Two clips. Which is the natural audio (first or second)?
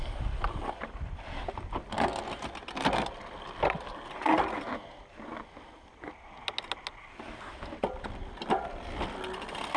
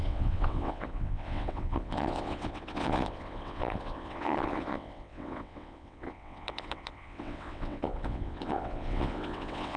first